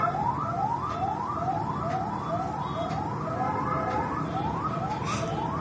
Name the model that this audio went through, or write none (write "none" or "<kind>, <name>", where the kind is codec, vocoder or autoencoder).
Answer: none